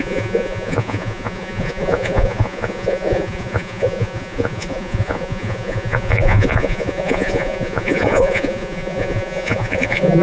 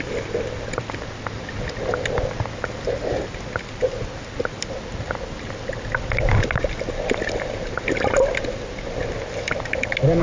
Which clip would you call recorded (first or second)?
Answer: second